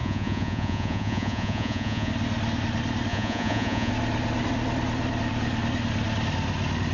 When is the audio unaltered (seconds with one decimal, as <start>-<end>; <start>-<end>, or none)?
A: 2.1-3.1; 3.9-6.9